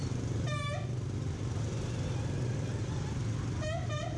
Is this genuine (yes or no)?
yes